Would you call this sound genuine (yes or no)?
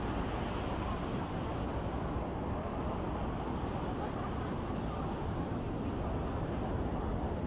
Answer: yes